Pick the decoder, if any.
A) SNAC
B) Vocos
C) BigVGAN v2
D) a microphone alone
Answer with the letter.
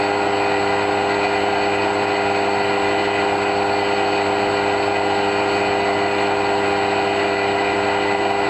D